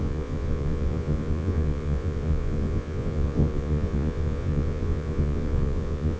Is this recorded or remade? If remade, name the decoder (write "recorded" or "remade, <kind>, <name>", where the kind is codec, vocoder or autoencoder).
remade, vocoder, Vocos